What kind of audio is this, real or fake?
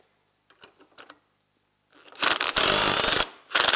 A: real